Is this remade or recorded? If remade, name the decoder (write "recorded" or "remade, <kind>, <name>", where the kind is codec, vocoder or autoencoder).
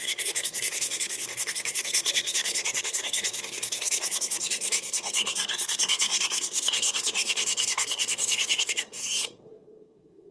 remade, codec, SNAC